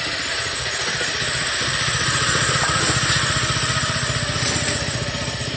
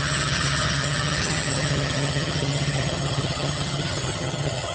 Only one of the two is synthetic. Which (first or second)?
second